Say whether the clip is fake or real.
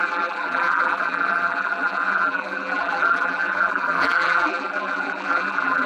fake